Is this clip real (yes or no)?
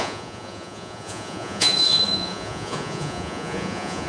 no